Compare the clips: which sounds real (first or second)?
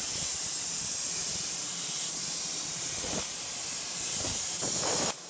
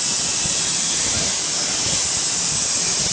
second